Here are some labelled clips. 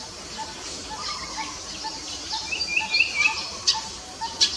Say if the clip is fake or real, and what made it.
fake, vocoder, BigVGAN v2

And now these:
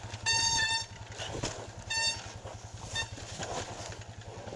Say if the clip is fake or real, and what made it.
real